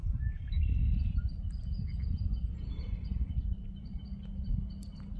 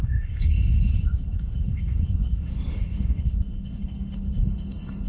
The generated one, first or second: second